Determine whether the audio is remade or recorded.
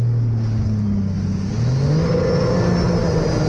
recorded